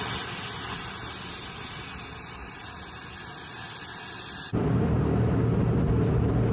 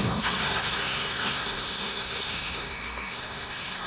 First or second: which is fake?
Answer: second